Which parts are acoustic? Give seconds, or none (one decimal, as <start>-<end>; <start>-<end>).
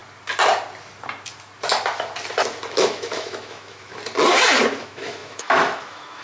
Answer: 0.0-2.7; 3.9-4.8